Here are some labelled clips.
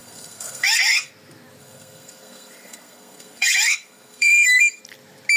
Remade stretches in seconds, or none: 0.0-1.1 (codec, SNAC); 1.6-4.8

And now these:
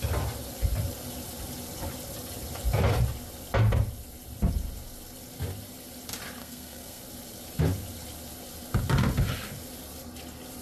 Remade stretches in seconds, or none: 6.4-7.0 (codec, SNAC)

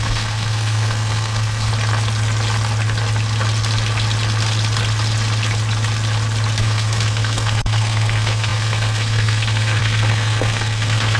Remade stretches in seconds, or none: 0.0-1.7 (codec, SNAC); 6.6-11.2

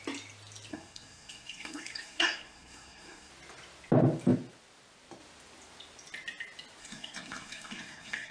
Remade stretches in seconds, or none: 0.7-3.3 (codec, SNAC); 6.8-8.3

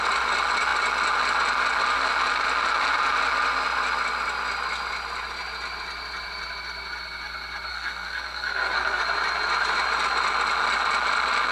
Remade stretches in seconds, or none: 7.7-9.0 (codec, SNAC)

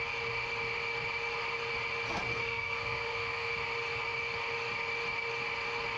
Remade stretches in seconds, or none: 2.3-3.5 (codec, SNAC)

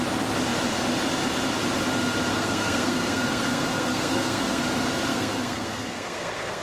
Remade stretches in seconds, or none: 2.3-4.6 (codec, SNAC); 5.1-6.6

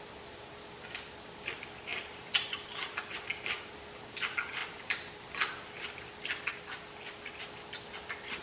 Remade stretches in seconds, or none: none